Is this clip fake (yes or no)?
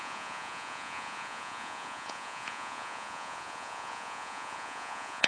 yes